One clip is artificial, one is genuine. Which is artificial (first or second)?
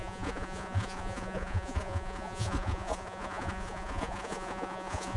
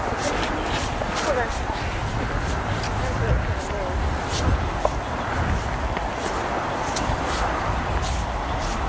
first